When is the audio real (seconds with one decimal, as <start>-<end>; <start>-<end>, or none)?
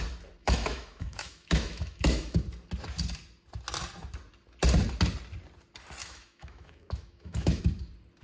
0.0-0.4; 2.4-6.0; 7.6-8.2